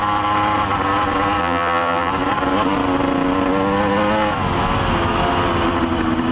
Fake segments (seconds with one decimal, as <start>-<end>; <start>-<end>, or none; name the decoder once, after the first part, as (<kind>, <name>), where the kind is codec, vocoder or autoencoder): 1.4-2.1 (vocoder, BigVGAN v2)